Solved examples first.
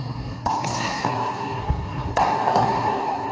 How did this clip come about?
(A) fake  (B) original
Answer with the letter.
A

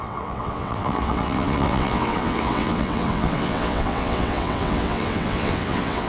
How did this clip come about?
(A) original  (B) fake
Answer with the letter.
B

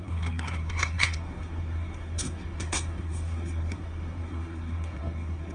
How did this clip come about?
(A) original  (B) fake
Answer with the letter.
B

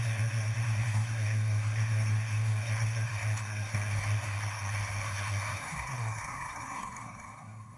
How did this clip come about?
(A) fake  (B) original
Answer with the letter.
A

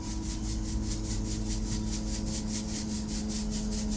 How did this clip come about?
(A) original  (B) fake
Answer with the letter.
A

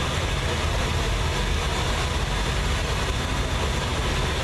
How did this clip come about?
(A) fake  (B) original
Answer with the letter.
B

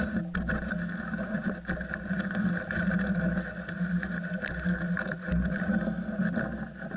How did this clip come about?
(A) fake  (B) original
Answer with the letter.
B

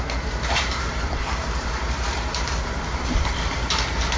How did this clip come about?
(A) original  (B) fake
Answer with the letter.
B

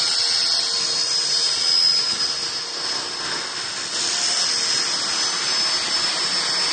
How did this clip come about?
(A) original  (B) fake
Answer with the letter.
A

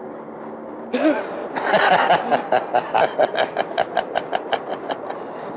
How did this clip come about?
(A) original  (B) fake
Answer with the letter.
A